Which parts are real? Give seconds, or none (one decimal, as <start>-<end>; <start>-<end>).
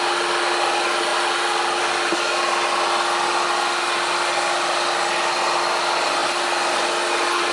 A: 0.0-7.5